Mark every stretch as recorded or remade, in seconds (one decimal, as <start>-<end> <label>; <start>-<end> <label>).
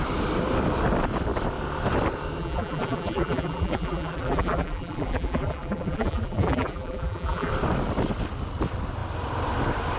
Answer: 0.0-2.4 recorded; 2.4-7.5 remade; 7.5-10.0 recorded